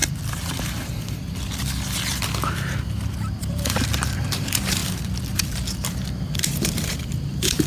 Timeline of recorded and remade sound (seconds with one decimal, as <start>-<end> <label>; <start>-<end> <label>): 0.0-3.4 recorded; 3.4-4.8 remade; 4.8-5.3 recorded; 5.3-7.7 remade